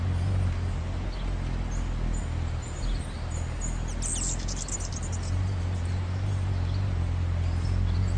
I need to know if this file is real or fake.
real